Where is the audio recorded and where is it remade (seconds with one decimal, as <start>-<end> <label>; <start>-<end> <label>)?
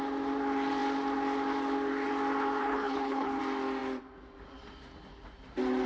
0.0-2.6 recorded; 2.6-3.4 remade; 3.4-5.9 recorded